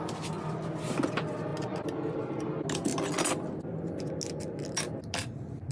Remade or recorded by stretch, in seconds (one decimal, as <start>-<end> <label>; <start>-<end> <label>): 0.0-5.7 recorded